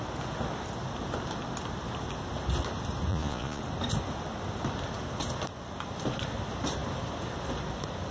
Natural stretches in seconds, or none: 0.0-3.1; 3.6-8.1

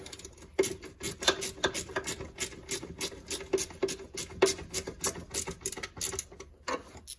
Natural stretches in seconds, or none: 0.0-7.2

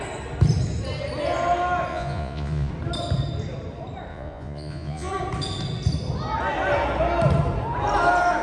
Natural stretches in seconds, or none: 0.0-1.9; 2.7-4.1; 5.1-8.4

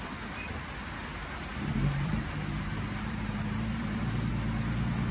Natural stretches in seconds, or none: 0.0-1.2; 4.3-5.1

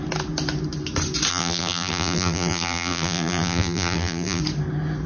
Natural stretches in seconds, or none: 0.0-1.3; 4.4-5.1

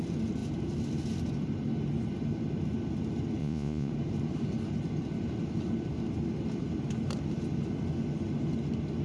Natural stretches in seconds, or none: 0.0-3.4; 3.9-9.0

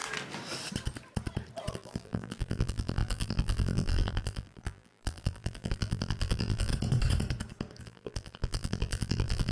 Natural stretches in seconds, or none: 0.0-1.7; 6.7-7.8